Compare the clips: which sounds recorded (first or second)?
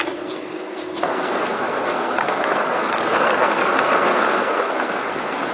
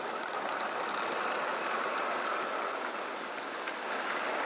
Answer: second